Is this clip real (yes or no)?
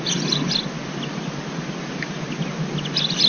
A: yes